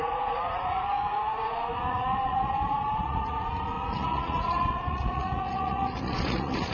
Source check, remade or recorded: remade